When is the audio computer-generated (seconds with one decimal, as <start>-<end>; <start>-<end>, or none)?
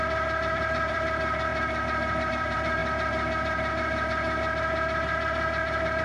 0.0-1.5; 2.3-2.8